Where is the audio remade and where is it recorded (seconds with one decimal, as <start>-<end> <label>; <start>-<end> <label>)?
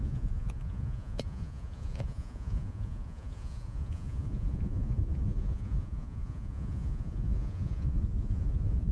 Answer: 0.0-8.9 remade